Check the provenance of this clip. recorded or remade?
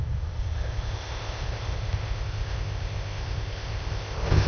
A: remade